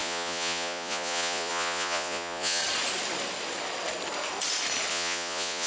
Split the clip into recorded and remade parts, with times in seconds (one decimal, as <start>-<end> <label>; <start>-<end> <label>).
0.0-2.6 remade; 2.6-4.9 recorded; 4.9-5.7 remade